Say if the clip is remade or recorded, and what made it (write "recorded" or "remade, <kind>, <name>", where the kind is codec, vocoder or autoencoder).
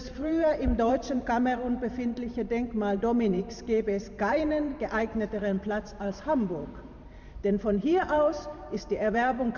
remade, vocoder, BigVGAN v2